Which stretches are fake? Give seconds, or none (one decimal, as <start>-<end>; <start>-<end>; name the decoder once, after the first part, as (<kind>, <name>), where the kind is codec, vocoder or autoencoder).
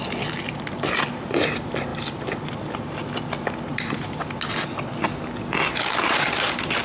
none